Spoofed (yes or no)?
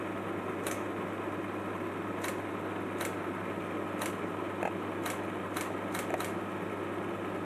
no